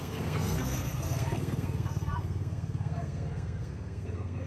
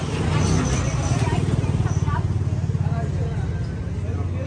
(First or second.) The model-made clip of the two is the first